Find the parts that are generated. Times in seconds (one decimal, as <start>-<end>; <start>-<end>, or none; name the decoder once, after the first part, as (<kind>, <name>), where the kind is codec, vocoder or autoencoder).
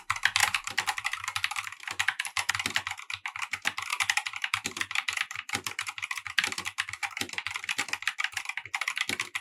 0.4-2.5 (vocoder, BigVGAN v2); 3.9-8.4